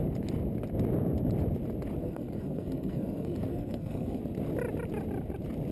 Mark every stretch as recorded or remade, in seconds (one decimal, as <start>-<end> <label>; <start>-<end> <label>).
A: 0.0-2.0 recorded; 2.0-4.2 remade; 4.2-5.7 recorded